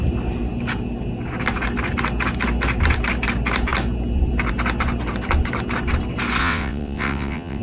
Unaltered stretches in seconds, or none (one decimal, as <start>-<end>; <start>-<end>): 0.0-6.4